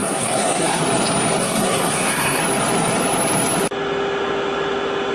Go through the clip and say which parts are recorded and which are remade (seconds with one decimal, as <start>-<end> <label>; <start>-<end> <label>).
0.0-0.8 remade; 0.8-1.4 recorded; 1.4-2.4 remade; 2.4-5.1 recorded